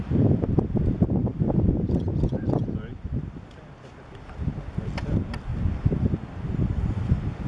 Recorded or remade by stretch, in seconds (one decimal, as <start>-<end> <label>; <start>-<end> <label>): 0.0-5.5 recorded; 5.5-6.1 remade; 6.1-7.5 recorded